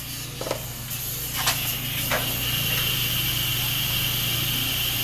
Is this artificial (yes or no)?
no